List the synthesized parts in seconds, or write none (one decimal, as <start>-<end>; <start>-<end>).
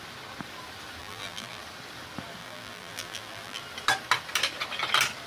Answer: 1.0-1.6; 2.4-3.6